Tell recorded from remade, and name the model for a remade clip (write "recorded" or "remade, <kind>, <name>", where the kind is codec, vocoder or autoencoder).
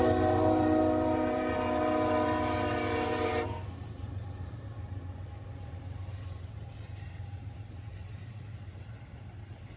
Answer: remade, vocoder, BigVGAN v2